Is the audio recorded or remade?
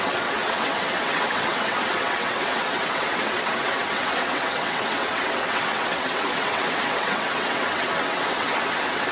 remade